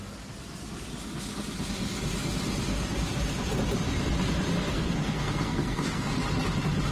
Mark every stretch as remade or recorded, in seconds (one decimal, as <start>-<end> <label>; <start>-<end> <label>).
0.0-4.7 recorded; 4.7-6.1 remade; 6.1-6.9 recorded